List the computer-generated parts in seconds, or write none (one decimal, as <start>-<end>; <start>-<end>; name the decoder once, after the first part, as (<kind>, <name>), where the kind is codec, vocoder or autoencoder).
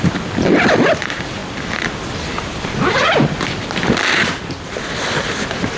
none